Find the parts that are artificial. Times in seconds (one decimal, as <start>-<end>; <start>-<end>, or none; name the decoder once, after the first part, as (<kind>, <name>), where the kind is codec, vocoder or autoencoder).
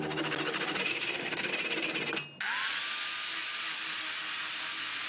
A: 0.9-1.5 (codec, SNAC)